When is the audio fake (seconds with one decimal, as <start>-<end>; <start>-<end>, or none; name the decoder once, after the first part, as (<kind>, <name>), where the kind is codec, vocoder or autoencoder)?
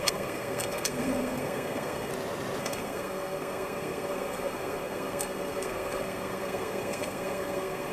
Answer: 0.0-2.1 (codec, SNAC); 2.6-7.9